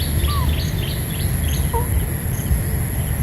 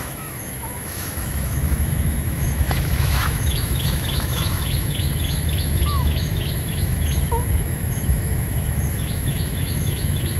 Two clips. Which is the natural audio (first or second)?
first